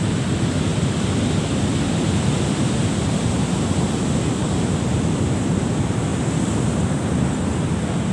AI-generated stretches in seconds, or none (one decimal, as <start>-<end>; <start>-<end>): 6.1-7.4